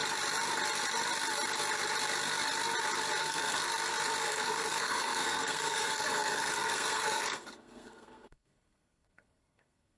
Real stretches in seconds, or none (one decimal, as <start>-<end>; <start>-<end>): 0.0-3.2; 3.6-4.2